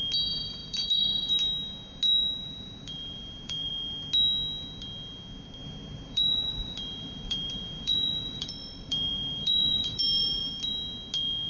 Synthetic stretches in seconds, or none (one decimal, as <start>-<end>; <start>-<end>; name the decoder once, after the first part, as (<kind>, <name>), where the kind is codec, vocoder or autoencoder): 0.6-1.3 (vocoder, BigVGAN v2); 2.9-3.7; 5.6-8.5; 8.9-10.5